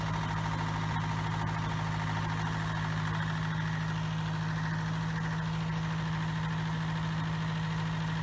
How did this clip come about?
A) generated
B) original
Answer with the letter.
B